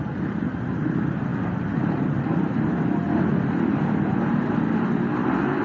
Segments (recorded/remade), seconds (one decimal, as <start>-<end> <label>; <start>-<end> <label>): 0.0-5.6 recorded